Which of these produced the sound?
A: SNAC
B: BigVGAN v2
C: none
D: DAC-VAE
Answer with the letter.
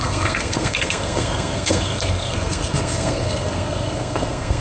A